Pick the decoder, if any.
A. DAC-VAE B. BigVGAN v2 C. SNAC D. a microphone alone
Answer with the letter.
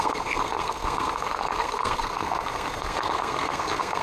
C